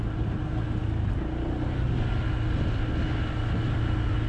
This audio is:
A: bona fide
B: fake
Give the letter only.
A